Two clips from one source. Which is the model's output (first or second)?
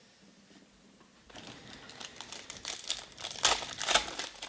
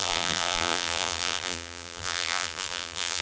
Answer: second